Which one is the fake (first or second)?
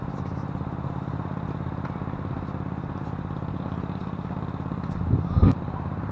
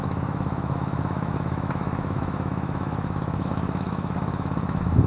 second